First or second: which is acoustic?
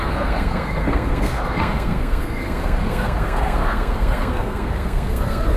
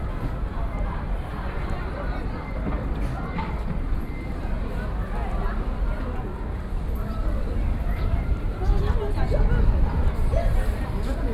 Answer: second